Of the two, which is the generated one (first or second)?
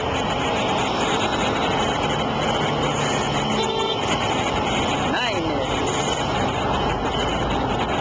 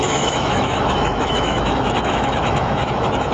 second